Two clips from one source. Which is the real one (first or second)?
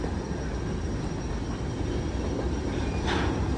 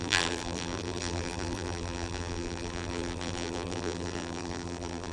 first